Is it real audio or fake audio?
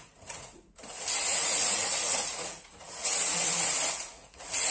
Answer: fake